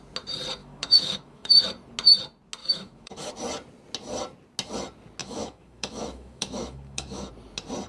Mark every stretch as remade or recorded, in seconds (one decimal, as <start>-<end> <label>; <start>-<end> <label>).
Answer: 0.0-0.6 recorded; 0.6-1.5 remade; 1.5-2.6 recorded; 2.6-3.3 remade; 3.3-5.2 recorded; 5.2-7.3 remade; 7.3-7.9 recorded